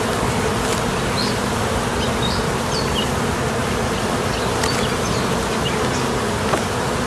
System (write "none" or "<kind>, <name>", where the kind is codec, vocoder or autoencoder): none